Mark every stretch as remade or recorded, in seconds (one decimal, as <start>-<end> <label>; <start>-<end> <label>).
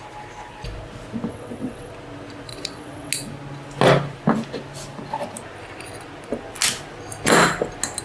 0.0-1.3 recorded; 1.3-1.9 remade; 1.9-2.5 recorded; 2.5-3.1 remade; 3.1-8.0 recorded